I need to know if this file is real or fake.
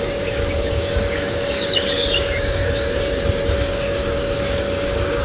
fake